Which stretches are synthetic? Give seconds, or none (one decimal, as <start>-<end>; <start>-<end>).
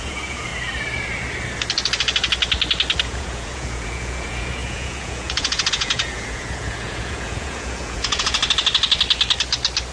0.0-0.5; 3.0-8.4